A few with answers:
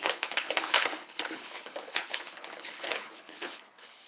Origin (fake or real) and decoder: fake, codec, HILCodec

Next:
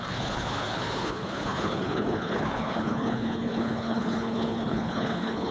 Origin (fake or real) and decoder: fake, codec, HILCodec